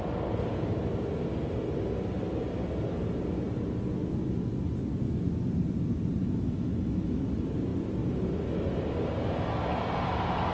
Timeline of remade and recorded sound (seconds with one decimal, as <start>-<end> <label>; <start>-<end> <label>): 0.0-6.2 recorded; 6.2-7.2 remade; 7.2-10.5 recorded